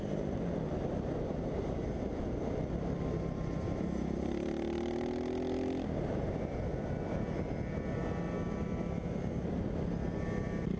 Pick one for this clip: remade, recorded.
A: recorded